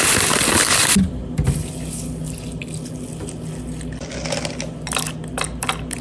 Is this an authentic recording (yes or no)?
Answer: yes